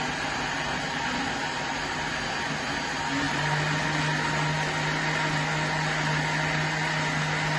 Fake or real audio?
real